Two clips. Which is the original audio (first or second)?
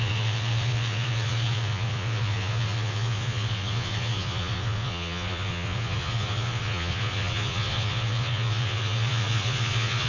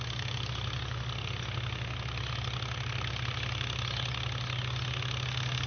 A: second